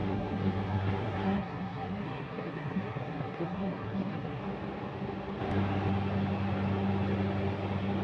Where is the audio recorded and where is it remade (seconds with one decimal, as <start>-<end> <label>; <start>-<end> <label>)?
0.0-4.4 remade; 4.4-8.0 recorded